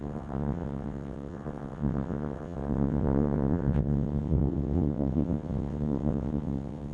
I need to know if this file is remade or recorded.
remade